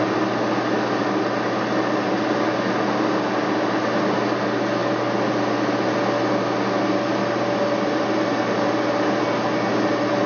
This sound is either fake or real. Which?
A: real